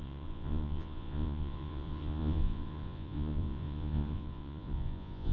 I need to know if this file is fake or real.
fake